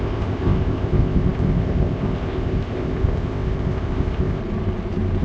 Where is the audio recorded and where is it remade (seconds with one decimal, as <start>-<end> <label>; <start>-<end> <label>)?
0.0-4.4 remade; 4.4-5.2 recorded

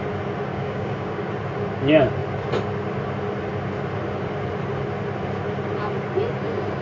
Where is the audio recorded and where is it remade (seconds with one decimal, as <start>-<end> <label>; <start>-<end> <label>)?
0.0-0.5 recorded; 0.5-1.3 remade; 1.3-6.8 recorded